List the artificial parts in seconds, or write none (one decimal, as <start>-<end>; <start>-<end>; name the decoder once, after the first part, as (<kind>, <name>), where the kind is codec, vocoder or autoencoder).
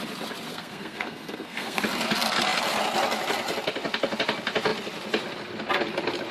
0.5-1.8 (codec, SNAC)